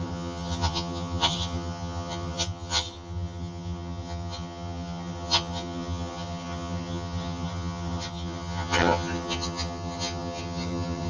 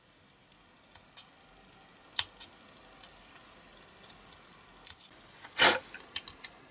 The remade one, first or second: first